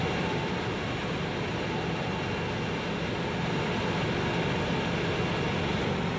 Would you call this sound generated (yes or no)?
no